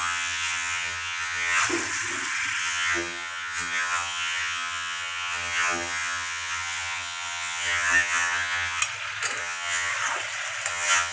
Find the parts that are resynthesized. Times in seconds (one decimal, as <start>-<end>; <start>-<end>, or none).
0.0-1.6; 2.6-8.8; 9.4-9.9; 10.7-11.1